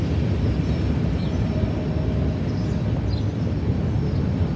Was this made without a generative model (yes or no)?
yes